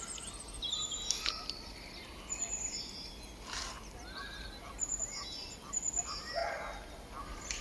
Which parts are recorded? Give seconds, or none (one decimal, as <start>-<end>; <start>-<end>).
0.0-7.6